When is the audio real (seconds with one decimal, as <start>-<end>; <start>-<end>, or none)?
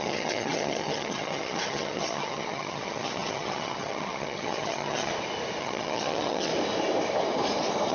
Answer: 5.1-5.6; 6.5-7.9